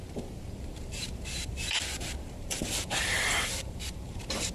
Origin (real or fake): fake